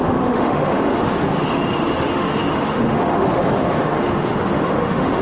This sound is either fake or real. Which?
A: fake